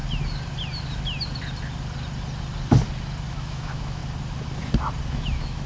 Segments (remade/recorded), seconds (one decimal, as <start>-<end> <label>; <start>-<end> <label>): 0.0-3.3 recorded; 3.3-4.0 remade; 4.0-5.1 recorded; 5.1-5.7 remade